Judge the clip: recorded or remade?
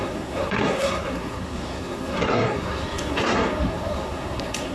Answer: remade